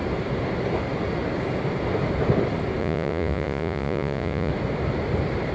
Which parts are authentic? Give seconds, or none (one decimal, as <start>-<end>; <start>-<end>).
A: 0.0-2.8; 4.5-5.5